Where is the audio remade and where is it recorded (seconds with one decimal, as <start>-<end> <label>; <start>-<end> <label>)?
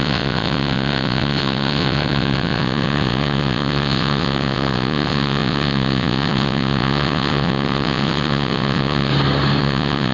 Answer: 0.0-9.1 remade; 9.1-9.6 recorded; 9.6-10.1 remade